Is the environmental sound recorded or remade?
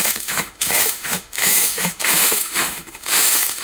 remade